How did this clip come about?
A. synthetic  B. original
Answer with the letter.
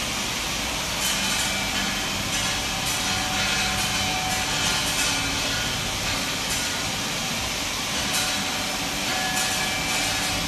B